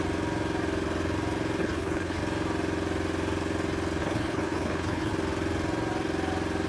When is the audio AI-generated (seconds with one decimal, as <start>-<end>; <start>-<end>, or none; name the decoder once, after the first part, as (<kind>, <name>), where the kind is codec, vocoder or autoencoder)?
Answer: 1.6-2.2 (codec, HILCodec); 4.0-5.1